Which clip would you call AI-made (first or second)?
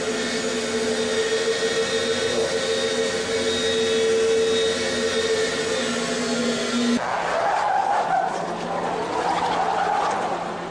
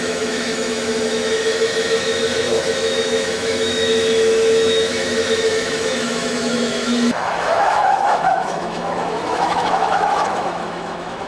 second